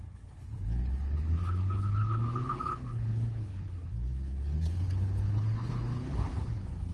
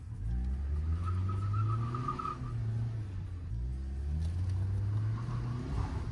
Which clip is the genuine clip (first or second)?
second